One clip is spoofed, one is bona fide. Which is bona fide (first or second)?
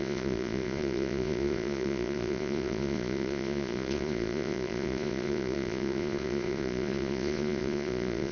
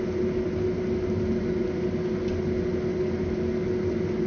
second